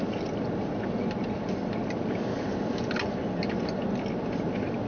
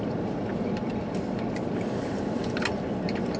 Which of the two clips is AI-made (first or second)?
second